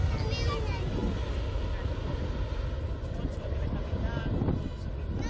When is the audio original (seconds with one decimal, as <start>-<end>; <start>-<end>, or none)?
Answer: 0.0-5.3